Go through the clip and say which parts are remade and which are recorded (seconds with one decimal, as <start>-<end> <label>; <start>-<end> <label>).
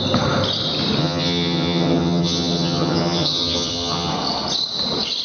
0.0-1.0 recorded; 1.0-4.1 remade; 4.1-5.2 recorded